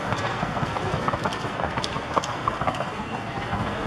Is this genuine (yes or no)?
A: no